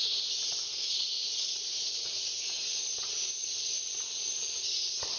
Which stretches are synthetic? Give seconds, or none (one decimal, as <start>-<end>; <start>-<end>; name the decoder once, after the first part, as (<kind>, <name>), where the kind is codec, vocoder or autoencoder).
1.2-3.7 (vocoder, BigVGAN v2)